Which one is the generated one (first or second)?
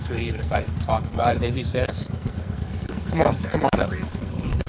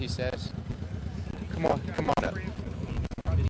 first